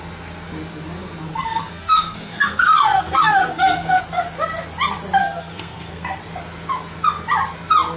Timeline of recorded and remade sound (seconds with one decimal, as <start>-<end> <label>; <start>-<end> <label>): 0.0-1.3 recorded; 1.3-4.0 remade; 4.0-5.2 recorded; 5.2-6.2 remade; 6.2-8.0 recorded